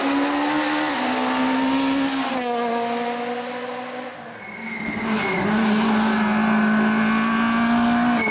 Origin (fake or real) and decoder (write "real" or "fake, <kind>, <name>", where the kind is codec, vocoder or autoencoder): real